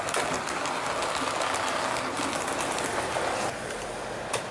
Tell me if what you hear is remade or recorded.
recorded